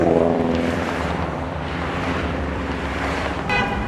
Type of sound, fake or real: fake